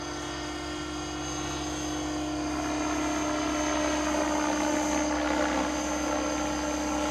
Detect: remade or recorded recorded